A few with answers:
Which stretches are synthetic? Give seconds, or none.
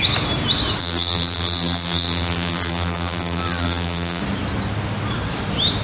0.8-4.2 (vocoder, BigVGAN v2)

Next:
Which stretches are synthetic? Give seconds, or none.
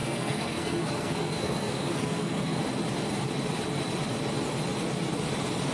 0.0-2.6 (codec, SNAC)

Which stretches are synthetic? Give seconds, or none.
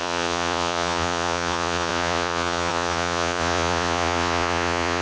0.0-5.0 (vocoder, Vocos)